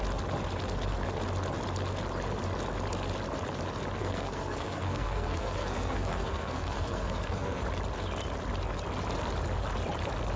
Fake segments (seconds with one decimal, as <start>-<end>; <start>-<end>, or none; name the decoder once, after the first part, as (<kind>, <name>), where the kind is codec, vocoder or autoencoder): 4.0-7.6 (codec, SNAC)